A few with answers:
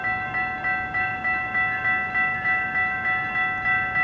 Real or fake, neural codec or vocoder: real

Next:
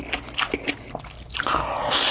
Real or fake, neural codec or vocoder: real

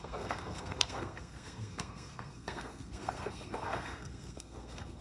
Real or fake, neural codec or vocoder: fake, codec, SNAC